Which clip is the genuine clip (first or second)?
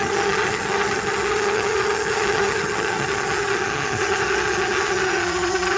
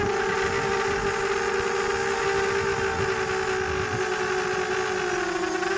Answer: second